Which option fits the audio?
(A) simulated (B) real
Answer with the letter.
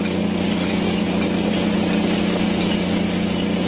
B